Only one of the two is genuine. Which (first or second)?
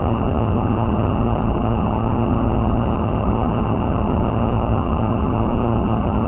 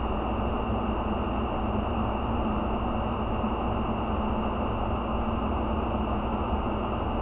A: second